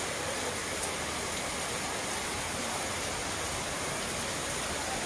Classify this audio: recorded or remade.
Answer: recorded